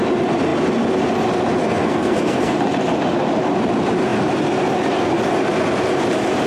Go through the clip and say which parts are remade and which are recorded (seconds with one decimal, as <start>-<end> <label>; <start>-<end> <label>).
0.0-1.6 recorded; 1.6-2.6 remade; 2.6-6.5 recorded